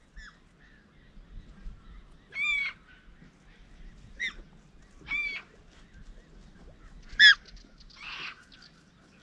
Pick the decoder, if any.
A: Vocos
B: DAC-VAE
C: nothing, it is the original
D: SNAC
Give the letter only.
C